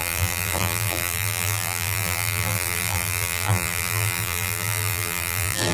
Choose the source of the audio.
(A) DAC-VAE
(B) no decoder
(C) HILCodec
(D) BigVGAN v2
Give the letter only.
D